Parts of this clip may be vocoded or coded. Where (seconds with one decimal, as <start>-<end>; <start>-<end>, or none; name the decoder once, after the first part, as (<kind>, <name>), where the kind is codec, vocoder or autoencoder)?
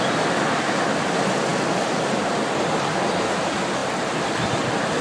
none